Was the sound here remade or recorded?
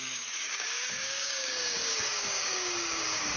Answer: remade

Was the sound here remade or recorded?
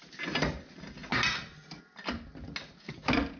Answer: recorded